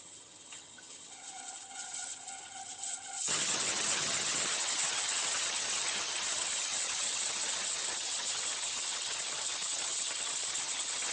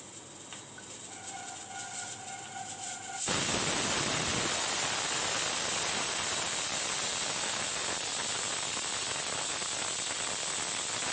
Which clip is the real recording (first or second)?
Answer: second